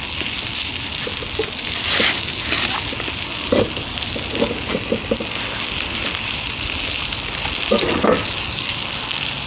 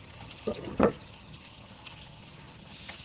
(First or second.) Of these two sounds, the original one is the first